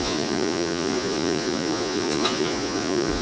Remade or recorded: remade